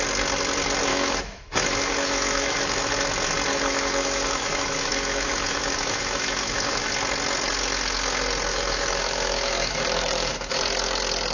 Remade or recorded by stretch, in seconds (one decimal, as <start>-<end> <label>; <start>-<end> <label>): 0.0-0.9 recorded; 0.9-2.9 remade; 2.9-3.5 recorded; 3.5-6.9 remade; 6.9-8.5 recorded; 8.5-10.6 remade; 10.6-11.3 recorded

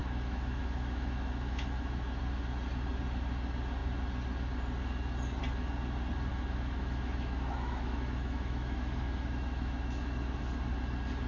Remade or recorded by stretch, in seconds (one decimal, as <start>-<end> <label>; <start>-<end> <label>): 0.0-2.2 remade; 2.2-6.3 recorded; 6.3-10.4 remade; 10.4-11.3 recorded

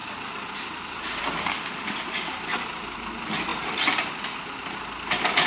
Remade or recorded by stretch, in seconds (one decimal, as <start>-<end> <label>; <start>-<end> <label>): 0.0-5.5 recorded

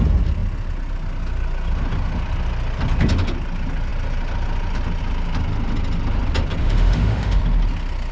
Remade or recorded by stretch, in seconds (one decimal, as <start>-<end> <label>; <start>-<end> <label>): 0.0-6.6 recorded; 6.6-7.4 remade; 7.4-8.1 recorded

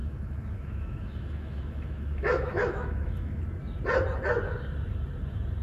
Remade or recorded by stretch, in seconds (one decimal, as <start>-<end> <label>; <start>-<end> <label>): 0.0-3.4 remade; 3.4-5.6 recorded

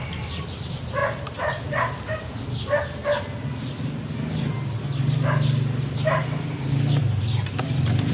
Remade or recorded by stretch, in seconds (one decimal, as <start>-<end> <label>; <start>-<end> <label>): 0.0-8.1 recorded

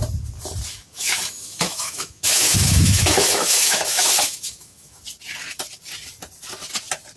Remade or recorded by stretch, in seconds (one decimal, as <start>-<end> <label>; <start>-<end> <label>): 0.0-0.7 recorded; 0.7-5.0 remade; 5.0-7.2 recorded